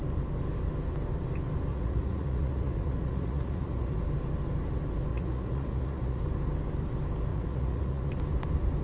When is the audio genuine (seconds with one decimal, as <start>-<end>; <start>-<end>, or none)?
0.0-1.7; 4.0-5.1; 6.2-7.3; 8.1-8.8